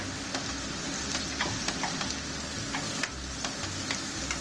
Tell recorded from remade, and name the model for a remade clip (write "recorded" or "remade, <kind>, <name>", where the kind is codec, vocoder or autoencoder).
recorded